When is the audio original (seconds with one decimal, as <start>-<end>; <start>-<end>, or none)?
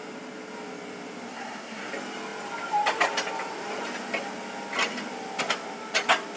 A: 0.0-1.3; 1.9-6.4